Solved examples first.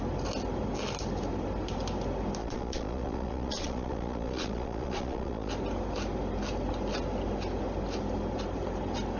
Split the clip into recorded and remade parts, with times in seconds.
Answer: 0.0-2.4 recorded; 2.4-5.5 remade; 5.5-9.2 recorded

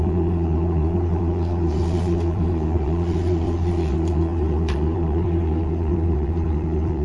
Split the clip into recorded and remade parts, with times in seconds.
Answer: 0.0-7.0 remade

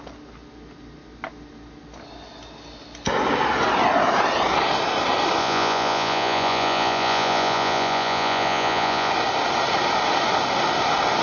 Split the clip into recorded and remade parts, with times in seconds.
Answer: 0.0-5.4 recorded; 5.4-9.1 remade; 9.1-11.2 recorded